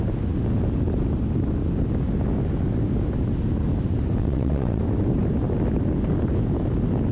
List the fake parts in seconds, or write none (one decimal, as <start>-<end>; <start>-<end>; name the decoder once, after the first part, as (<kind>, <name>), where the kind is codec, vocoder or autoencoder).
4.2-4.8 (vocoder, WaveNeXt)